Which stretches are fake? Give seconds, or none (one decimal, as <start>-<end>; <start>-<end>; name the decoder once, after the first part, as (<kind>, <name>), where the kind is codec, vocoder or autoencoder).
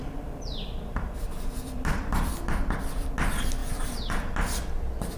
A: 0.0-3.1 (vocoder, BigVGAN v2); 3.6-4.1